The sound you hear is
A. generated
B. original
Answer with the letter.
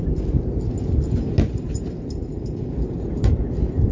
B